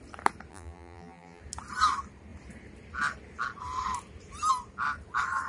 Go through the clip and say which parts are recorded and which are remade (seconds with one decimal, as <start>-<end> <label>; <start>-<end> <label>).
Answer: 0.0-0.5 recorded; 0.5-1.4 remade; 1.4-5.5 recorded